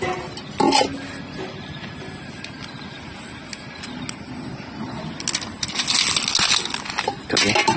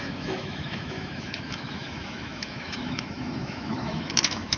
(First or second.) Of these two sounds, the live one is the first